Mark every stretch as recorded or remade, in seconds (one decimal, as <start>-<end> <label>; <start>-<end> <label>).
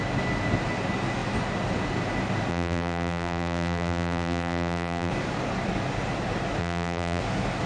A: 0.0-2.5 recorded; 2.5-5.1 remade; 5.1-6.6 recorded; 6.6-7.2 remade; 7.2-7.7 recorded